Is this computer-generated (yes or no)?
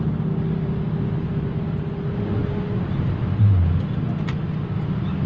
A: no